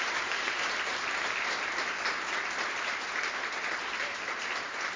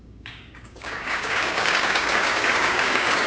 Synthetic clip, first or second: second